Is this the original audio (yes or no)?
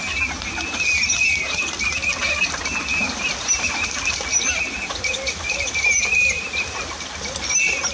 yes